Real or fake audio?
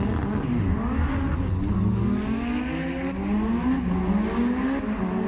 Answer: real